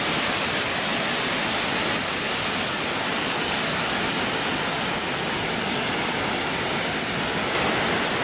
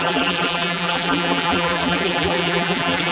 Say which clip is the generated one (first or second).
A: second